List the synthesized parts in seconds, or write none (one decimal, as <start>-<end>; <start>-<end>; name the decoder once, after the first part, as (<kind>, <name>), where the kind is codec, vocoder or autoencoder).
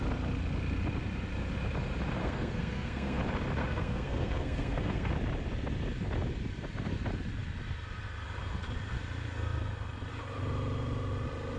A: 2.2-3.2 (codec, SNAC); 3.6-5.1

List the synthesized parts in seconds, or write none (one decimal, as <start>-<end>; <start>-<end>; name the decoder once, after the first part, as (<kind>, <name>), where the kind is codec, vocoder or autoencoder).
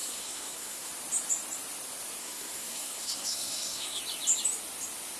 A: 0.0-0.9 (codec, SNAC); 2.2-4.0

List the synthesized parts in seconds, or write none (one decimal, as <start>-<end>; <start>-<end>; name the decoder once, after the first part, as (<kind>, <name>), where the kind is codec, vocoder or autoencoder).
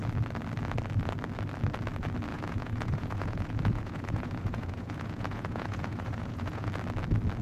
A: 2.3-6.7 (vocoder, Vocos)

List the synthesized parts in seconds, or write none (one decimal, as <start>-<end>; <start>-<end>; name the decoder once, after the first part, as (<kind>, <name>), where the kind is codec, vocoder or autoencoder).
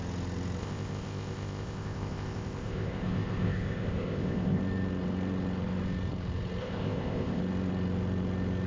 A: 0.6-4.6 (codec, ZipCodec); 6.6-7.4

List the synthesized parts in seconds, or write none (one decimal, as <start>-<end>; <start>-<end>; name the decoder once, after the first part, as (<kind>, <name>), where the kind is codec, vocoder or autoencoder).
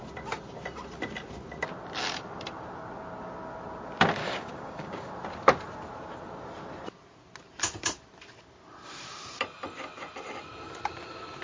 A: 4.2-5.1 (codec, DAC)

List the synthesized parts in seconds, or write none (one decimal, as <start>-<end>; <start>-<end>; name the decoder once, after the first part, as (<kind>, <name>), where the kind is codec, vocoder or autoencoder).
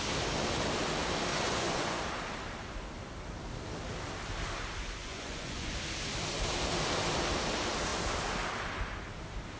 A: 1.3-2.0 (vocoder, Vocos); 5.0-5.7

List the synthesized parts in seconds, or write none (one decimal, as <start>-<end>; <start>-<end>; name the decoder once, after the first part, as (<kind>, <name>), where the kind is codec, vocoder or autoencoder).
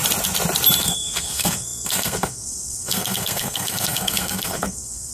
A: 0.8-5.1 (codec, SNAC)